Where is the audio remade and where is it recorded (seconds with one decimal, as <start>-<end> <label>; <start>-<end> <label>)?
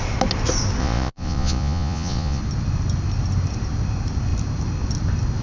0.0-0.8 recorded; 0.8-2.4 remade; 2.4-5.4 recorded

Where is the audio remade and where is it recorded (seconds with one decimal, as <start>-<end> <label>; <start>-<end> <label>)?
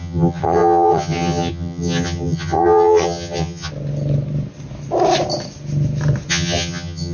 0.0-3.7 remade; 3.7-6.3 recorded; 6.3-7.1 remade